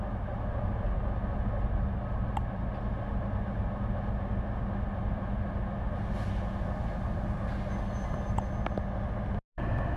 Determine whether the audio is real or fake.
real